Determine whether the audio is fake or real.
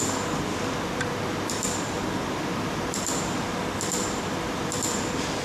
real